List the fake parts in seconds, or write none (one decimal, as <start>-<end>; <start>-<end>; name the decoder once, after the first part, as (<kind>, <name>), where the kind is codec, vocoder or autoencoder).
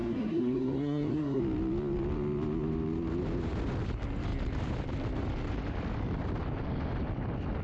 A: 0.0-1.4 (codec, SNAC)